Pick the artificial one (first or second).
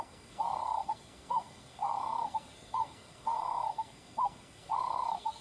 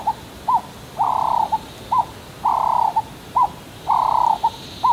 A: first